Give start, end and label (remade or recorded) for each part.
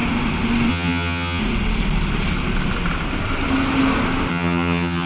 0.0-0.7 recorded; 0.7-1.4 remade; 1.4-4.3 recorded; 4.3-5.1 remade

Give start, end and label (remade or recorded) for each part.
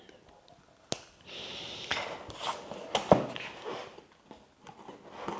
0.0-5.4 recorded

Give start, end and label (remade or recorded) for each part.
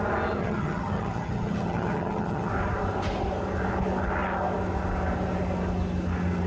0.0-0.4 recorded; 0.4-2.5 remade; 2.5-6.5 recorded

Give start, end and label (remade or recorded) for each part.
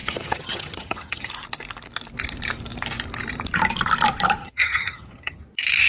0.0-1.3 remade; 1.3-4.4 recorded; 4.4-5.4 remade; 5.4-5.9 recorded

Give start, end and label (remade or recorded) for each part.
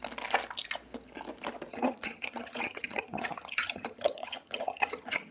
0.0-1.7 recorded; 1.7-5.3 remade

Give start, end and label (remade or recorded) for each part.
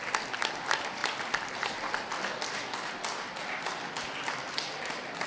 0.0-5.3 recorded